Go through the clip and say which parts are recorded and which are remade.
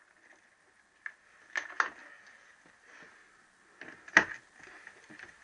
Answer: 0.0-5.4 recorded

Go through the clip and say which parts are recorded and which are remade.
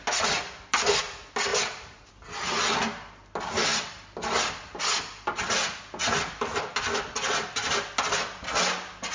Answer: 0.0-1.5 recorded; 1.5-2.1 remade; 2.1-9.1 recorded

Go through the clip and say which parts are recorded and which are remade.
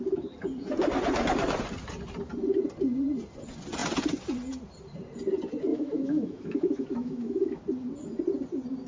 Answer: 0.0-5.7 recorded; 5.7-7.6 remade; 7.6-8.9 recorded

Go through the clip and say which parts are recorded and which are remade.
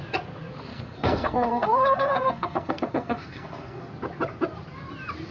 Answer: 0.0-0.7 recorded; 0.7-3.9 remade; 3.9-5.3 recorded